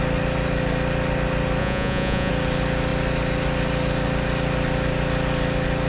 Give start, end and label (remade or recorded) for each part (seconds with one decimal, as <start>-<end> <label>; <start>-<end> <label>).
0.0-1.6 recorded; 1.6-2.3 remade; 2.3-5.9 recorded